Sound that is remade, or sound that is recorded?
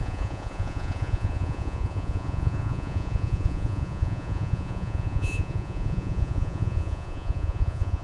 remade